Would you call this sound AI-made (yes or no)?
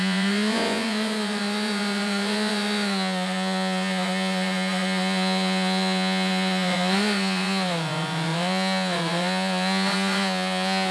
yes